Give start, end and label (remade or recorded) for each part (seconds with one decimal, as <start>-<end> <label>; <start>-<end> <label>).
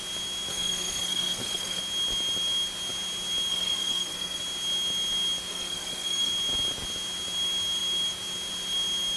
0.0-0.5 recorded; 0.5-1.8 remade; 1.8-3.5 recorded; 3.5-4.4 remade; 4.4-5.5 recorded; 5.5-6.3 remade; 6.3-9.2 recorded